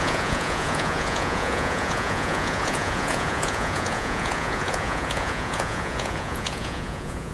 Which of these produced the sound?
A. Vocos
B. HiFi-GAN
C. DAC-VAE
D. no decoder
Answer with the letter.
A